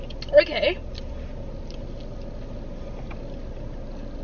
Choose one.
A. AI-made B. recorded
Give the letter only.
B